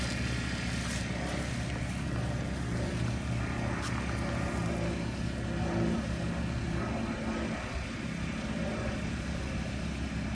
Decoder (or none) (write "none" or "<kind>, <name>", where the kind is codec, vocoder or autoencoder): none